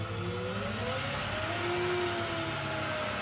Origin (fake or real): real